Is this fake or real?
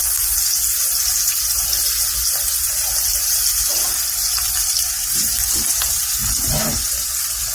real